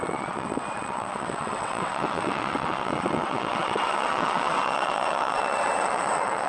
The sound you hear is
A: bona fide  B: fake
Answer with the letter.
B